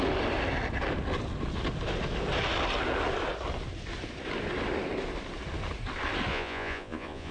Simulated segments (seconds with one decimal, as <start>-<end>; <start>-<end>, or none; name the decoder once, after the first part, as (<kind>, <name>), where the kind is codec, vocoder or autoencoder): 6.3-7.3 (vocoder, Vocos)